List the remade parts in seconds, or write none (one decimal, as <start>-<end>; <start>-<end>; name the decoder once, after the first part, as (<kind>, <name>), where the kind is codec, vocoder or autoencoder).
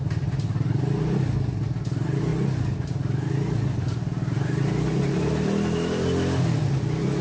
none